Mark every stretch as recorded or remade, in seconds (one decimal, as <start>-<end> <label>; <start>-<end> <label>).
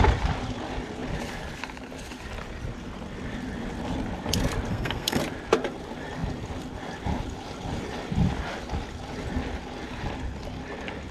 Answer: 0.0-4.7 recorded; 4.7-5.2 remade; 5.2-11.1 recorded